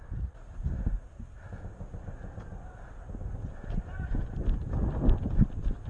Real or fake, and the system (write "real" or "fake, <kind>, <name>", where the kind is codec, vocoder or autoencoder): real